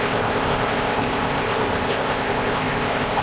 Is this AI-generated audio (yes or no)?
yes